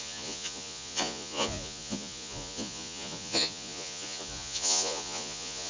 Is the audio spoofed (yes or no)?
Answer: yes